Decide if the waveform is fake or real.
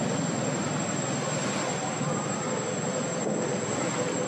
real